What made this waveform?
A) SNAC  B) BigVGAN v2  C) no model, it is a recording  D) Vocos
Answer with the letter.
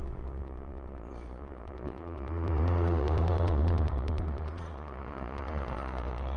D